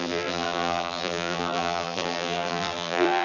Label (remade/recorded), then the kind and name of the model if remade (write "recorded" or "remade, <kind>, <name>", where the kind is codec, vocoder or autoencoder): remade, vocoder, BigVGAN v2